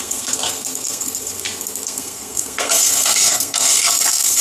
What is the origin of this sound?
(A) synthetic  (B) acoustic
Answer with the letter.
A